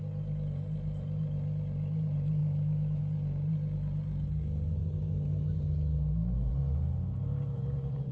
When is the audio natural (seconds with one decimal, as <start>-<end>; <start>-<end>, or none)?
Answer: 0.0-2.4; 3.0-8.1